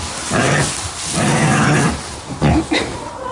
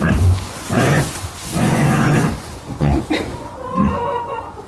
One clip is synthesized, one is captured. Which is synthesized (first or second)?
second